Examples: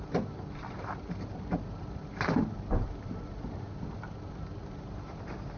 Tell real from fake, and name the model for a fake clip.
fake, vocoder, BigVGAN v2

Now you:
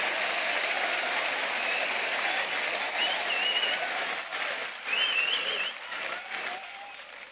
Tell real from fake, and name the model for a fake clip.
fake, vocoder, BigVGAN v2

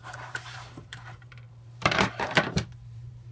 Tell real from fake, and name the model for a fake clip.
fake, vocoder, BigVGAN v2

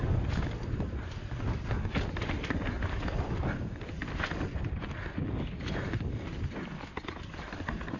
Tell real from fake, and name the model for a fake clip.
real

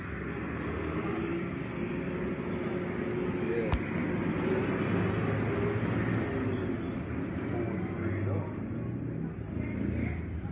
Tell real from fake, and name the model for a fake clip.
real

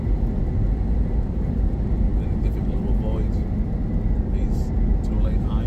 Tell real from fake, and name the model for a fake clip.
real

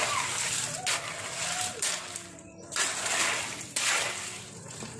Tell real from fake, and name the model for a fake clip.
real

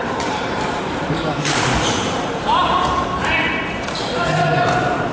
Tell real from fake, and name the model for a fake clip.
fake, vocoder, BigVGAN v2